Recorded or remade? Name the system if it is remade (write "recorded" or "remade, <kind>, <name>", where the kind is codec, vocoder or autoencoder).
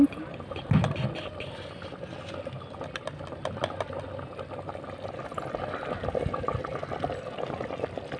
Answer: recorded